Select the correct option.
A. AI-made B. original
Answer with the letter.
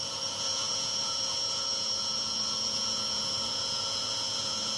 A